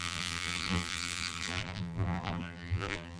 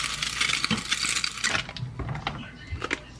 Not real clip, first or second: first